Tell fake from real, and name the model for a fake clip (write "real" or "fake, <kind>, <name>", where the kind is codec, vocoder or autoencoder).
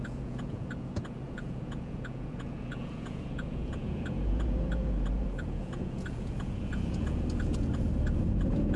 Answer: fake, vocoder, Vocos